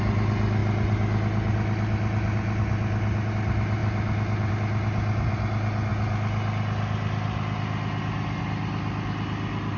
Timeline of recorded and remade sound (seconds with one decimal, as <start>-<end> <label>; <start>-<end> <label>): 0.0-9.8 recorded